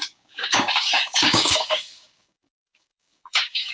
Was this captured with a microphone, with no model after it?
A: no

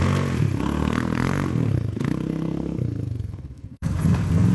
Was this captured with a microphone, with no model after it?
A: no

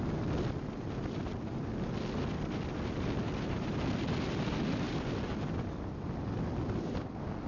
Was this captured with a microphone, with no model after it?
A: yes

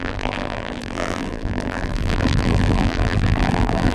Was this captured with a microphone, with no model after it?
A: no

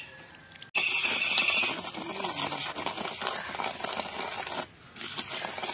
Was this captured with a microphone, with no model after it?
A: yes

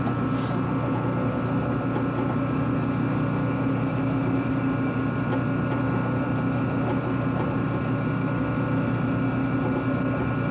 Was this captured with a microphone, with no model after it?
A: yes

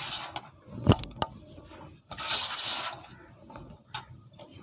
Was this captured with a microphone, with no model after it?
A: yes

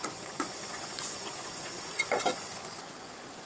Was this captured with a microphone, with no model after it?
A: no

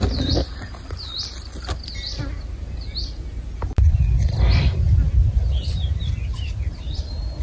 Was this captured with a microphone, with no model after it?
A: no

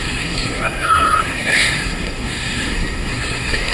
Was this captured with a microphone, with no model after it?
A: no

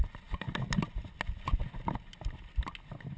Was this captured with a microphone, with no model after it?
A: yes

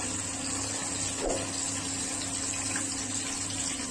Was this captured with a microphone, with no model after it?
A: yes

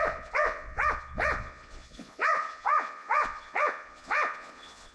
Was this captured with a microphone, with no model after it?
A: no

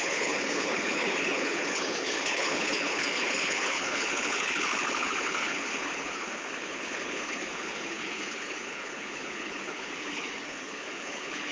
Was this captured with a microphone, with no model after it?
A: no